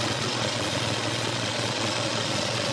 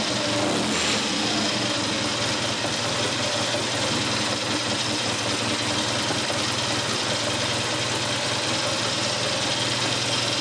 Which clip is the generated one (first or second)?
first